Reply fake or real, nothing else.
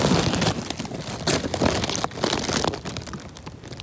real